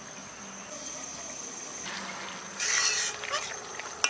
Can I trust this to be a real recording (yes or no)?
yes